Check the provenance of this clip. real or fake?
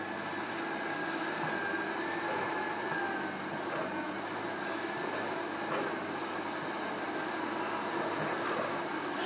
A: real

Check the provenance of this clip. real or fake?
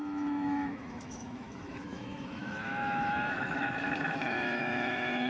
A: fake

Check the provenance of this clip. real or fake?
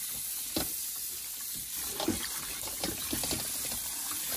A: real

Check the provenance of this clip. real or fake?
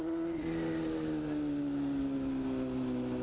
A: real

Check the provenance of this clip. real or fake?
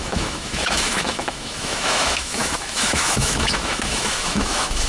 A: fake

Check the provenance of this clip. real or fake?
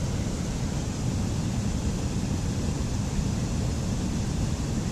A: real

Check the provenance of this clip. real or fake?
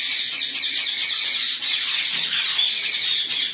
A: real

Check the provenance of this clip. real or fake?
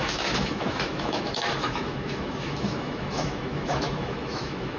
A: fake